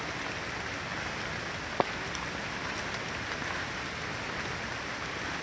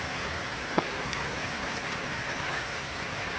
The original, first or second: first